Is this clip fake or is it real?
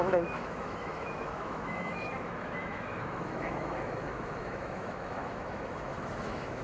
fake